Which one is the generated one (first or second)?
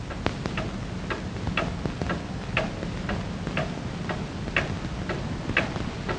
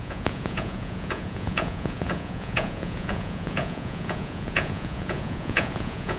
second